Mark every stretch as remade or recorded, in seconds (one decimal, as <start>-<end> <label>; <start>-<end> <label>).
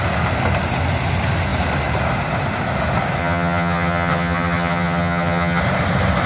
0.0-3.2 recorded; 3.2-5.6 remade; 5.6-6.3 recorded